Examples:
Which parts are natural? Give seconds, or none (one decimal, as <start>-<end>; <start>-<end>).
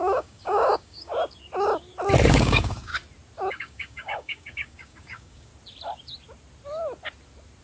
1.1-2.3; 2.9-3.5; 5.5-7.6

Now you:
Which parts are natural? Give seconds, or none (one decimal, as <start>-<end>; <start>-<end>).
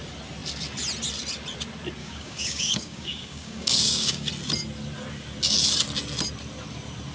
0.0-2.0; 4.3-7.1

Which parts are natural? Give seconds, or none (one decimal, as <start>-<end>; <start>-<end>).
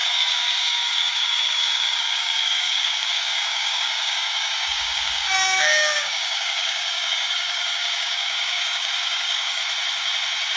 9.6-10.6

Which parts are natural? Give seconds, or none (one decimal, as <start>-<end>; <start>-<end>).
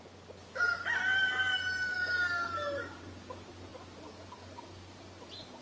0.0-1.9; 2.8-5.6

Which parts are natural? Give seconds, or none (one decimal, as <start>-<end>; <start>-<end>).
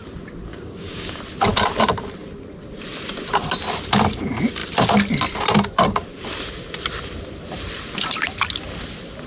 0.0-0.5; 1.2-9.3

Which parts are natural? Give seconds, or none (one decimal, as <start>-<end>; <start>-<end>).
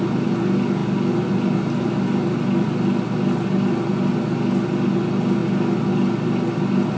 0.0-7.0